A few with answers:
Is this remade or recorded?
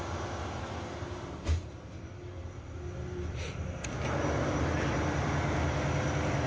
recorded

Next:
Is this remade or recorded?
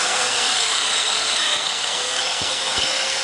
remade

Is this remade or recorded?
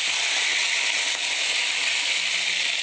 recorded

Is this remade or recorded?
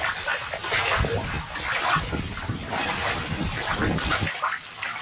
recorded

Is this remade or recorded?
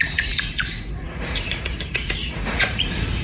remade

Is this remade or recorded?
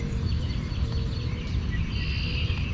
recorded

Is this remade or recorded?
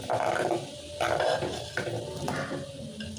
recorded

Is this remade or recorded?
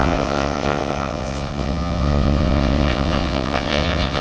remade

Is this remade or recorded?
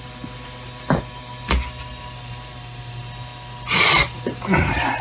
recorded